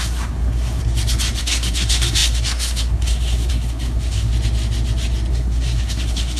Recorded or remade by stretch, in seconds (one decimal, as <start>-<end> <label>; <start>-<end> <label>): 0.0-0.8 remade; 0.8-1.4 recorded; 1.4-4.3 remade; 4.3-5.3 recorded; 5.3-6.4 remade